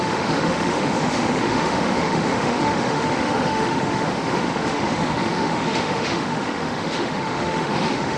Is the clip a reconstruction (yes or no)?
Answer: yes